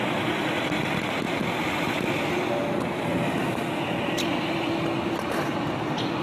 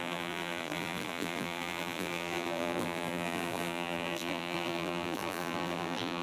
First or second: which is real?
first